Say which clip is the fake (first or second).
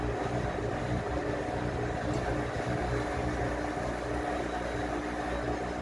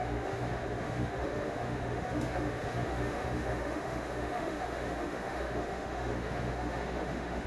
second